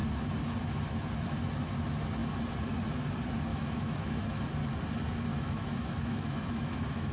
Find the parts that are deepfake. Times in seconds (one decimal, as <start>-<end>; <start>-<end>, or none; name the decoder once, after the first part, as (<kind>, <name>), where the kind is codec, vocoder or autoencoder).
3.5-4.4 (autoencoder, DAC-VAE); 5.3-7.1